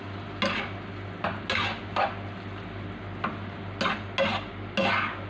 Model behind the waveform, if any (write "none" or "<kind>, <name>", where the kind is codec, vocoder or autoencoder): none